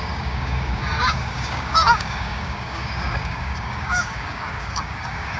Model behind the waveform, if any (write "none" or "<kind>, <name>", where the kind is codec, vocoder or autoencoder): codec, DAC